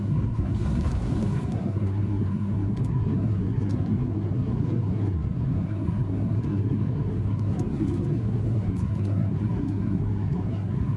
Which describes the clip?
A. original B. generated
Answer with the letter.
B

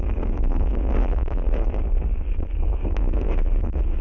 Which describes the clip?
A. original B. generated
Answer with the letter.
B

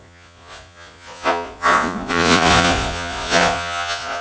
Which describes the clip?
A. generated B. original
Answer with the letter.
A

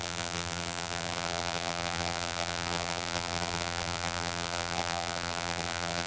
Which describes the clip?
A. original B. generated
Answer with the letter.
B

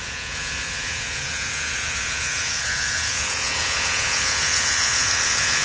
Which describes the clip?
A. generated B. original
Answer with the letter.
A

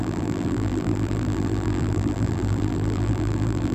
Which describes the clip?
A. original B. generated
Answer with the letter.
B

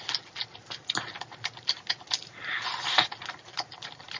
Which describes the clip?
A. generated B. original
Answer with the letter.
B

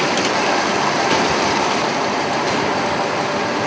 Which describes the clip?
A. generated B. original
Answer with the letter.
A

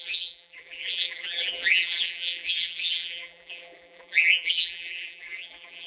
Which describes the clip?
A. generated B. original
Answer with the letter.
A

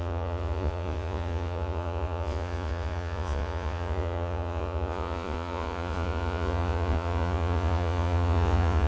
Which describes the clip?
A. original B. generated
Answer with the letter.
B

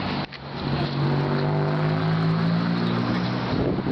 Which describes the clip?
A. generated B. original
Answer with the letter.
B